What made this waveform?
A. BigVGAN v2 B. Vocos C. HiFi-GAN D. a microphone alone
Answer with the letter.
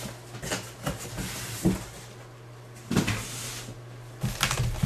D